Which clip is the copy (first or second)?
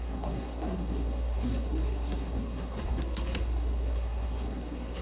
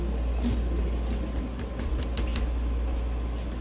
first